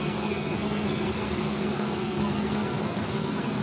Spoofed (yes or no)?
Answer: yes